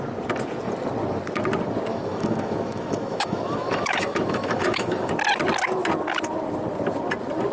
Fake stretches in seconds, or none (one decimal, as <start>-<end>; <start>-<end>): 1.9-5.1